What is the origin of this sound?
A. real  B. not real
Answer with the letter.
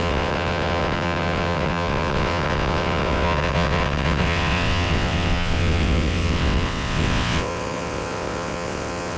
B